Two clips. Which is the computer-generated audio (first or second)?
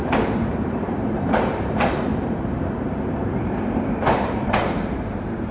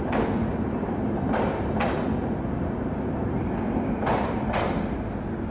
first